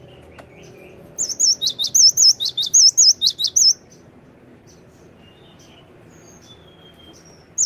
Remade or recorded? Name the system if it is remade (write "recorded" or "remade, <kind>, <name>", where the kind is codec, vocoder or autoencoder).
recorded